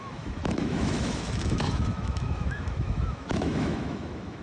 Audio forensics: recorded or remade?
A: remade